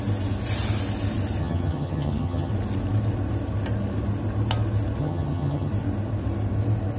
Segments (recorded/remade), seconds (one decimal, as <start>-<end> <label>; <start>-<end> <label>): 0.0-1.4 recorded; 1.4-2.5 remade; 2.5-5.0 recorded; 5.0-5.7 remade; 5.7-7.0 recorded

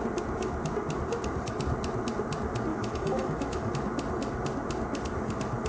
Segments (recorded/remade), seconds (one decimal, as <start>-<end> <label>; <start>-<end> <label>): 0.0-2.7 recorded; 2.7-3.7 remade; 3.7-5.7 recorded

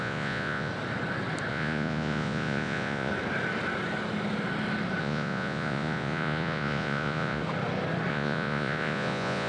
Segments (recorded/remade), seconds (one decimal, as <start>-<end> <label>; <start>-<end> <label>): 0.0-0.7 remade; 0.7-1.5 recorded; 1.5-3.1 remade; 3.1-5.0 recorded; 5.0-7.4 remade; 7.4-8.1 recorded; 8.1-9.5 remade

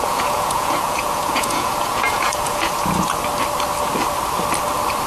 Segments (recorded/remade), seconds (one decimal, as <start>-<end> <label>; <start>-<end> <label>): 0.0-3.3 remade; 3.3-5.1 recorded